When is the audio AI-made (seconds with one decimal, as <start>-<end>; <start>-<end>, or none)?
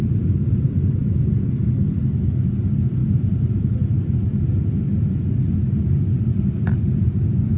none